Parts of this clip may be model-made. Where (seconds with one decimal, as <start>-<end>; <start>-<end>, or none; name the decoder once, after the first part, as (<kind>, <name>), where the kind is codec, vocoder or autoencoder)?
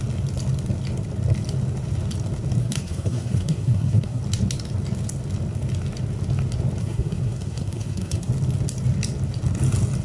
2.6-4.2 (codec, SNAC); 6.8-8.3